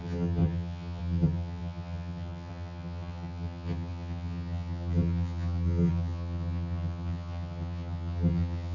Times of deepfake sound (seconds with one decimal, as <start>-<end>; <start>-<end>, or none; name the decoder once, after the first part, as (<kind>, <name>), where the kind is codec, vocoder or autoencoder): 0.0-8.7 (vocoder, HiFi-GAN)